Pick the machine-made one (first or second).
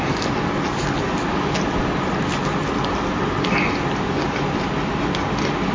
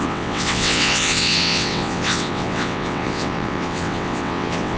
second